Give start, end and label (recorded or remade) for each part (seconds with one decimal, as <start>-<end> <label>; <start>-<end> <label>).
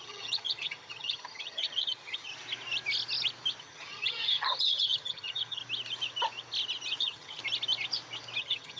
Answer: 0.0-2.3 remade; 2.3-3.6 recorded; 3.6-5.6 remade; 5.6-7.0 recorded; 7.0-7.4 remade; 7.4-8.4 recorded; 8.4-8.8 remade